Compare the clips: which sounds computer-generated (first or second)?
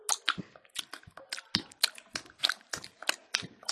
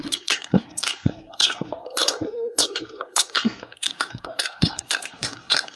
second